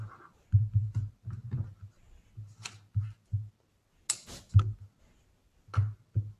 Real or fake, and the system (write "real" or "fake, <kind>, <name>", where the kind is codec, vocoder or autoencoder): real